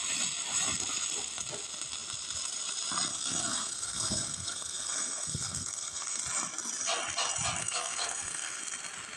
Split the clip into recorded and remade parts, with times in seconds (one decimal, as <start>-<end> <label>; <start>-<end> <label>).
0.0-3.1 recorded; 3.1-6.2 remade; 6.2-7.6 recorded; 7.6-8.6 remade; 8.6-9.2 recorded